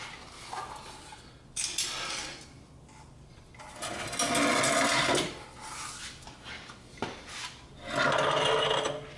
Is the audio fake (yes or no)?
no